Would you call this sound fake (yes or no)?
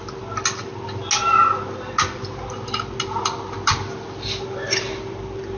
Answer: no